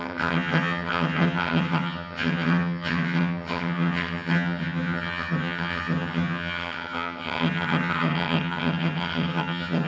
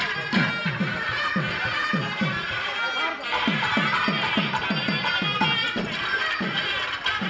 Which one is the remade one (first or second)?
first